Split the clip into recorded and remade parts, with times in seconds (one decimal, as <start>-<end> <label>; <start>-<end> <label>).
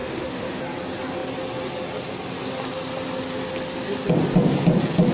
0.0-0.6 remade; 0.6-5.1 recorded